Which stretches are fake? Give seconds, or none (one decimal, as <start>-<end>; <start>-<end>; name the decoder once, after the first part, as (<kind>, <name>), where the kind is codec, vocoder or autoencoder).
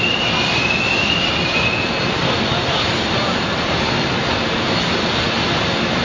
none